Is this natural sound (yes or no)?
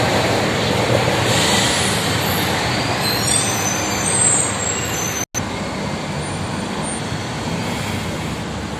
yes